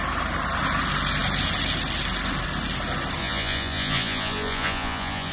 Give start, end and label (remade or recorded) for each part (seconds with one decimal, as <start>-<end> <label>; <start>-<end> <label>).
0.0-3.2 recorded; 3.2-5.3 remade